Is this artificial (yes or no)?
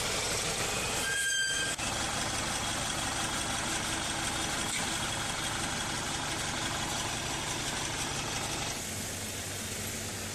no